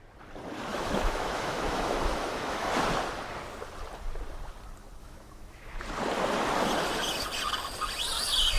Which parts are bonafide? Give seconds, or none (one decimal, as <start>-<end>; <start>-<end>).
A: 0.0-0.7; 2.7-5.0; 5.8-8.6